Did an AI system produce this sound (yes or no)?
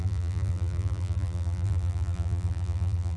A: yes